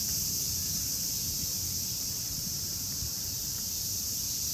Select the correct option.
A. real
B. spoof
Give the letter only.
B